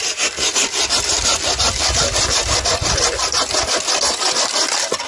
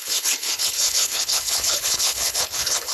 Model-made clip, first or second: second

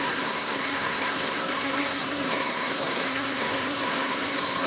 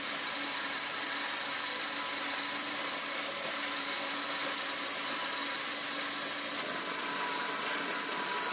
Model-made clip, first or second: first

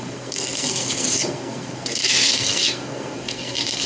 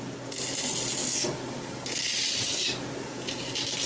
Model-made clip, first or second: first